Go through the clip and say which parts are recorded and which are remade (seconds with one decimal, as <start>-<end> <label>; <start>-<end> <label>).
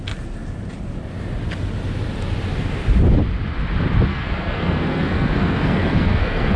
0.0-4.1 recorded; 4.1-6.6 remade